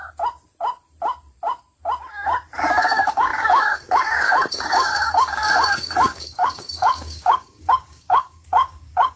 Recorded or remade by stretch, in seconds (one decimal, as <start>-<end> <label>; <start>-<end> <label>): 0.0-2.6 recorded; 2.6-9.2 remade